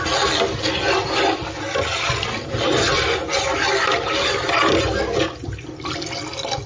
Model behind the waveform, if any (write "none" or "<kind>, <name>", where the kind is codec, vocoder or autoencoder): none